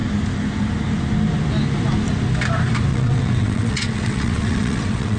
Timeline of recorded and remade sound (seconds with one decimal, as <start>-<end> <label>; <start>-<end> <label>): 0.0-2.9 recorded; 2.9-5.2 remade